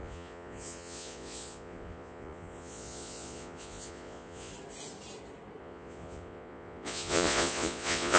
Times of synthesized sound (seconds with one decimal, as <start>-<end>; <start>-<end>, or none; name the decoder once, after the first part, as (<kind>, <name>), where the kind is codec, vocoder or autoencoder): 0.0-4.5 (vocoder, Vocos); 5.6-8.2